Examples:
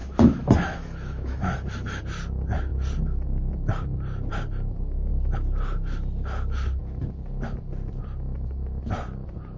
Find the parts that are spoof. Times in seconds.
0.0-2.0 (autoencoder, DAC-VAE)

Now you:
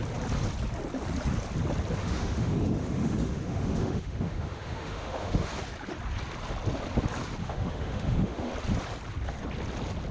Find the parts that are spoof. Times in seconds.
2.0-5.5 (autoencoder, DAC-VAE); 7.4-8.5

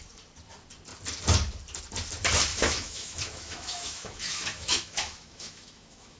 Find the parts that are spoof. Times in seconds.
2.5-6.2 (autoencoder, DAC-VAE)